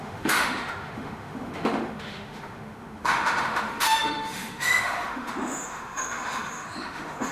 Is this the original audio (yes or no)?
no